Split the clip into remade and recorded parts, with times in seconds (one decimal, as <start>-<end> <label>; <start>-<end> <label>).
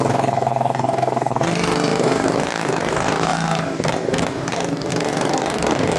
0.0-6.0 remade